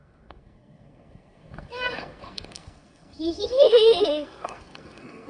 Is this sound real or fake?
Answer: fake